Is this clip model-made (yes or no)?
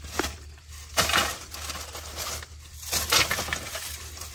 no